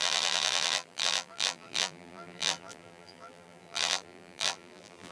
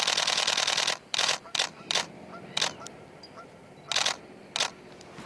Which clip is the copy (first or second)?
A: first